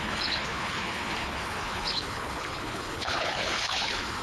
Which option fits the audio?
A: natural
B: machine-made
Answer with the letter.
B